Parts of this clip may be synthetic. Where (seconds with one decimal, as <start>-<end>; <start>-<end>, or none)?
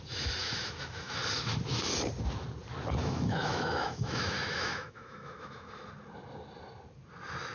0.4-1.2; 3.0-5.7